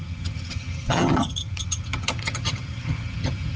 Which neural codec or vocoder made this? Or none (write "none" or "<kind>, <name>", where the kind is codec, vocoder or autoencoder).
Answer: vocoder, HiFi-GAN